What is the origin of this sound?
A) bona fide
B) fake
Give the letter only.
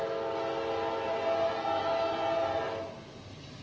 A